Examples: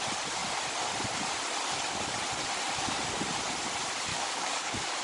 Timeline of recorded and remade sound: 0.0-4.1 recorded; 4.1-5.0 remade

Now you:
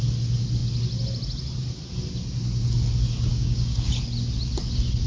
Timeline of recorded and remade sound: 0.0-3.3 recorded; 3.3-3.9 remade; 3.9-5.1 recorded

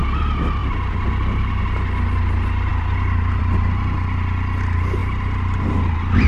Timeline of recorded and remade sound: 0.0-6.3 recorded

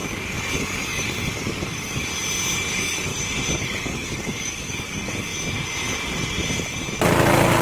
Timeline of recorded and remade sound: 0.0-2.1 remade; 2.1-2.7 recorded; 2.7-3.1 remade; 3.1-3.6 recorded; 3.6-5.3 remade; 5.3-7.6 recorded